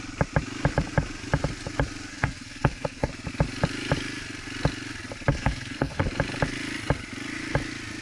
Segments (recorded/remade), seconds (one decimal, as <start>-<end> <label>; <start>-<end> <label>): 0.0-2.1 recorded; 2.1-3.1 remade; 3.1-5.3 recorded; 5.3-6.0 remade; 6.0-8.0 recorded